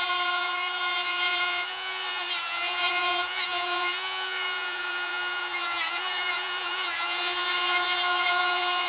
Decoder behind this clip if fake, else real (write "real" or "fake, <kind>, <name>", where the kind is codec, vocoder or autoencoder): fake, vocoder, Vocos